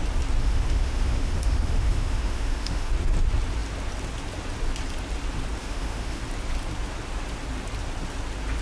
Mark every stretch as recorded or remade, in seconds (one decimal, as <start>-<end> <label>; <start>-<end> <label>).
0.0-0.4 recorded; 0.4-2.9 remade; 2.9-5.6 recorded; 5.6-6.2 remade; 6.2-8.6 recorded